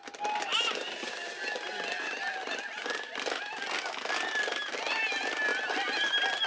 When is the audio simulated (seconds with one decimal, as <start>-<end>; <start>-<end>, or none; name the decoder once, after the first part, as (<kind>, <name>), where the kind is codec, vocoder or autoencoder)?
5.5-6.1 (vocoder, BigVGAN v2)